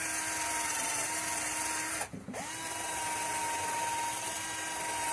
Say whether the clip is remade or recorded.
recorded